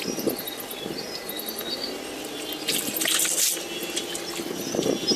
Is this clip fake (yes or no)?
no